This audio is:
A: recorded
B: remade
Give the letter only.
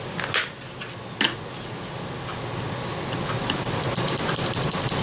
A